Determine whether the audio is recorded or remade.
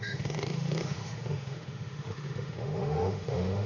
remade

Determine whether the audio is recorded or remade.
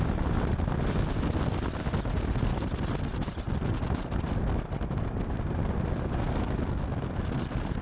recorded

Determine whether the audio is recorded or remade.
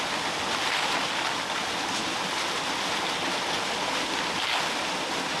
recorded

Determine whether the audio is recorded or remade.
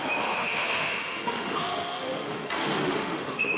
remade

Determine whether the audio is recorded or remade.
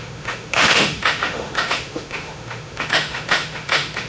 remade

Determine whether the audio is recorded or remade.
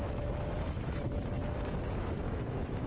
remade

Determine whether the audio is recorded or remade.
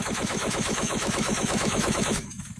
remade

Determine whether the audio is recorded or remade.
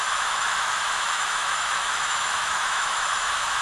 remade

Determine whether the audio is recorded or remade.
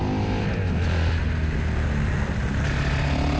recorded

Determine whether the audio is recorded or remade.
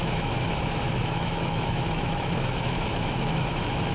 remade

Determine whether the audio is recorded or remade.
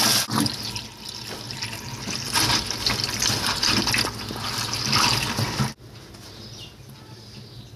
recorded